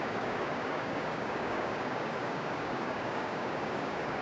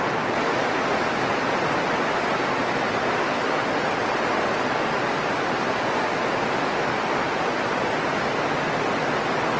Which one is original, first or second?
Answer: second